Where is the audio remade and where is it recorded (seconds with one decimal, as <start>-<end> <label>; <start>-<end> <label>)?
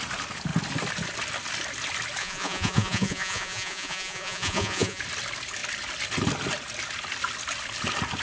0.0-2.2 recorded; 2.2-5.0 remade; 5.0-8.2 recorded